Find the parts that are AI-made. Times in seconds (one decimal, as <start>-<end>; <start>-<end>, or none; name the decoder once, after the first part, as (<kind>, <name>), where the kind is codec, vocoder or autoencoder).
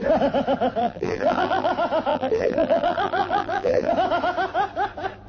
0.8-1.7 (vocoder, BigVGAN v2); 2.1-3.9